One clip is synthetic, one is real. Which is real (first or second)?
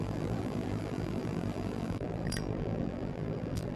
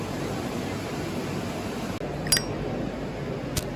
second